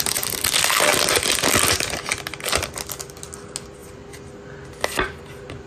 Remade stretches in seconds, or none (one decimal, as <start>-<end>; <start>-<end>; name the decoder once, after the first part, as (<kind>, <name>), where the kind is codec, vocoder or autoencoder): none